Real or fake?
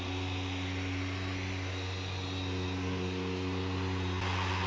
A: real